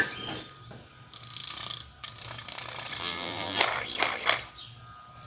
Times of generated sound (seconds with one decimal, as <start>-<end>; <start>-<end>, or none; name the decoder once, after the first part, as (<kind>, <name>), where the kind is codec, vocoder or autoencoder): 3.0-3.6 (vocoder, BigVGAN v2)